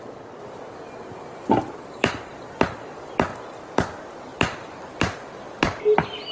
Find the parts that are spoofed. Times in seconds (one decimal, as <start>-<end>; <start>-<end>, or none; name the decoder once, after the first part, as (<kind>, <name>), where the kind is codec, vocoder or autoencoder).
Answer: 4.3-6.3 (vocoder, BigVGAN v2)